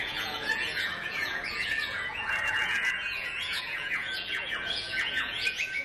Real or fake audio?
fake